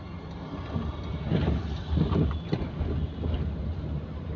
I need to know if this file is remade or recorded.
recorded